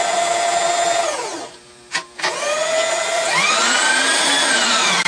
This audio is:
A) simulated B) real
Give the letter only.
A